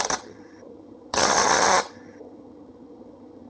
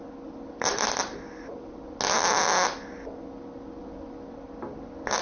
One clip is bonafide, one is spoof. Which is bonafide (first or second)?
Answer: second